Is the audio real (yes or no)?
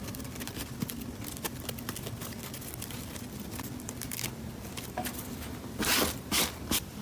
no